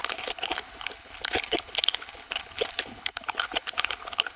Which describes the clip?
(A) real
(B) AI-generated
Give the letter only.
B